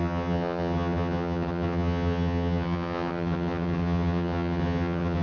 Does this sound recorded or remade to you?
remade